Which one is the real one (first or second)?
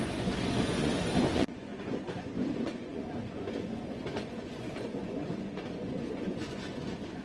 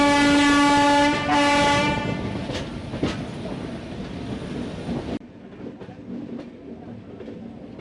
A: second